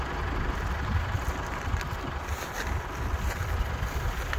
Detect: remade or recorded recorded